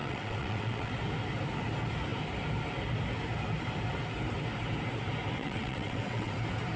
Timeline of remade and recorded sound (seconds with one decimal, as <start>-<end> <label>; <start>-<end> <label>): 0.0-0.9 remade; 0.9-5.4 recorded; 5.4-6.3 remade; 6.3-6.8 recorded